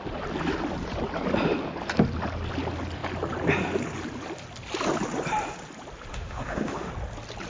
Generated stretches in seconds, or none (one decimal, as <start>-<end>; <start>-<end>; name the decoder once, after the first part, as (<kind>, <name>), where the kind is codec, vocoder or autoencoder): 6.1-6.9 (autoencoder, DAC-VAE)